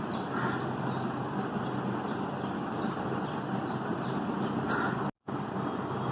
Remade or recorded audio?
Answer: recorded